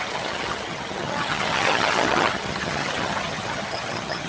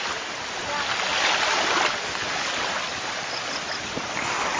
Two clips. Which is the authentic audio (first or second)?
second